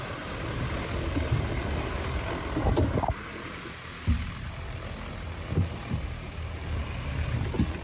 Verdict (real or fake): real